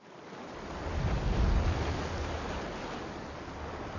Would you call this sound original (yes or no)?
yes